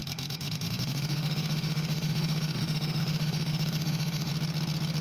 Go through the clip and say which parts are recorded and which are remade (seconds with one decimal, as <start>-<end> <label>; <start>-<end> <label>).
0.0-4.3 remade; 4.3-5.0 recorded